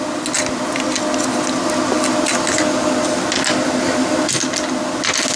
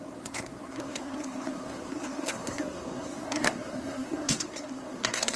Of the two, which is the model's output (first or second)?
second